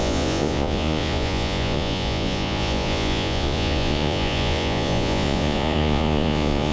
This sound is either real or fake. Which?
fake